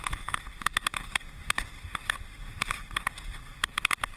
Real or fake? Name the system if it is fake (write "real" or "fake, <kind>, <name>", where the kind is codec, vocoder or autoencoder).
fake, autoencoder, DAC-VAE